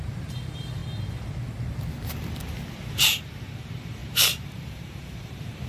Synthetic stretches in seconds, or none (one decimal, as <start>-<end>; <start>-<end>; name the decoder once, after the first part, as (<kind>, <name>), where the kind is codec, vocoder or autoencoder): 0.0-0.8 (vocoder, BigVGAN v2); 2.9-5.7